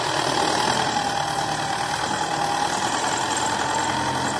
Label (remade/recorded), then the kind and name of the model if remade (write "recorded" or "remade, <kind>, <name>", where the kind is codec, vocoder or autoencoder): recorded